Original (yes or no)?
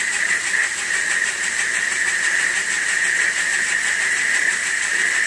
yes